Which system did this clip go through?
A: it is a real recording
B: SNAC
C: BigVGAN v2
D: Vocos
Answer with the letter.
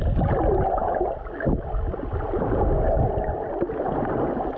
A